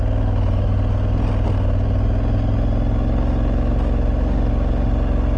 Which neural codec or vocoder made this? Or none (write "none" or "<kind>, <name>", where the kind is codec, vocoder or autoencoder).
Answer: none